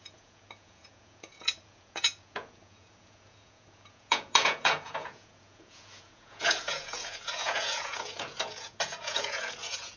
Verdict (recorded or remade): remade